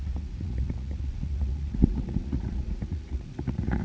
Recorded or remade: remade